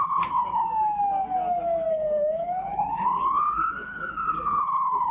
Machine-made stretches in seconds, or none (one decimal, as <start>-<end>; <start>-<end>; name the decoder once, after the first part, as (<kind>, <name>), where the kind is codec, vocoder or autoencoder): 0.0-0.7 (codec, HILCodec); 1.9-5.1